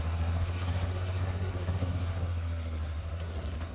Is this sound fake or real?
fake